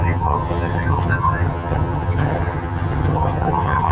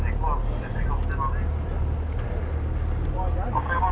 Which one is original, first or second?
second